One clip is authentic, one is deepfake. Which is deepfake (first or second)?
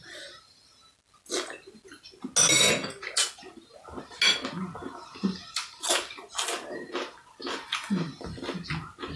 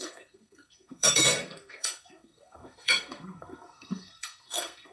second